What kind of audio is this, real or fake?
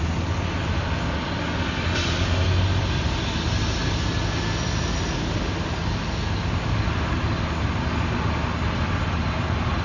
real